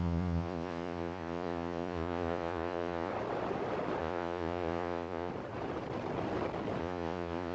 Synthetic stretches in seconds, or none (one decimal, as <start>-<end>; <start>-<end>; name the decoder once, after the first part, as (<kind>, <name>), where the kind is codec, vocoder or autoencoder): 0.0-3.1 (vocoder, Vocos); 4.0-5.3; 6.8-7.5